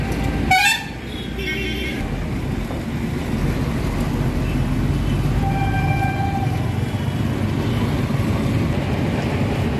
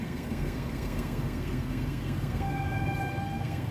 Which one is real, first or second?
first